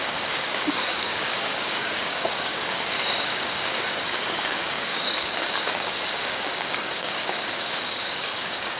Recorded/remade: remade